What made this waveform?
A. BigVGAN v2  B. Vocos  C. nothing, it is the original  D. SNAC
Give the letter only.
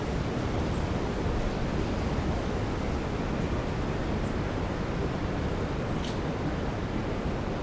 C